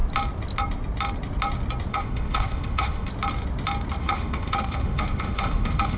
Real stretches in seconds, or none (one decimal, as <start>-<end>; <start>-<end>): 0.0-1.9; 3.1-4.0